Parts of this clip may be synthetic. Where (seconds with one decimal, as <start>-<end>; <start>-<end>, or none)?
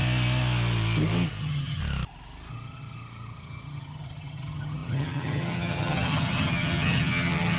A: 1.4-1.8; 2.5-7.6